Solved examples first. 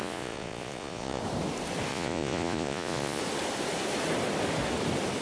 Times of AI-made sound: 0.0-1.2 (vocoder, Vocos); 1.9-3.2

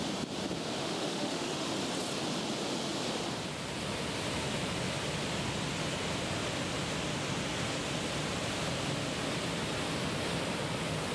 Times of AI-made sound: 0.8-1.7 (autoencoder, DAC-VAE)

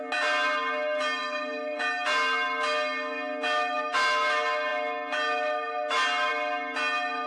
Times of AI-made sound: 1.2-1.8 (vocoder, BigVGAN v2)